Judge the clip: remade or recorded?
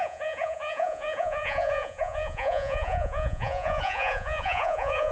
remade